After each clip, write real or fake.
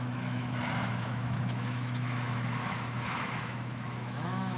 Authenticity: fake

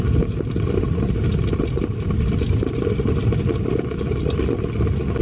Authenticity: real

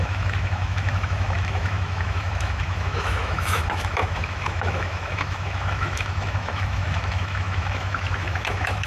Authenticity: fake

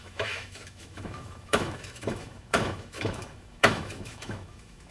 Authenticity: fake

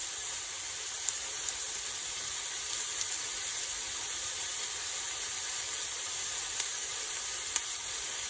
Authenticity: real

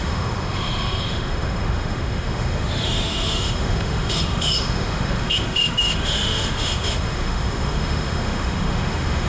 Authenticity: fake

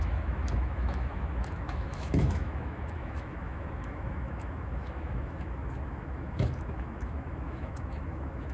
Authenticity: fake